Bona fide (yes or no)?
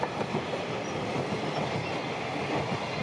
yes